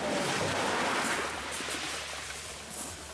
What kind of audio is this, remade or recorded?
recorded